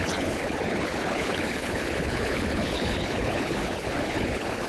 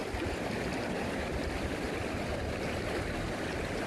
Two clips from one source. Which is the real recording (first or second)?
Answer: second